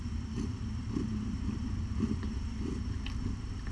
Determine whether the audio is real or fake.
fake